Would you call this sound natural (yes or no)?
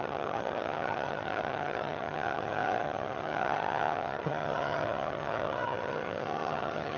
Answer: no